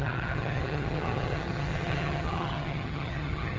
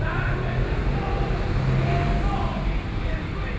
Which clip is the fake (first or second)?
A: first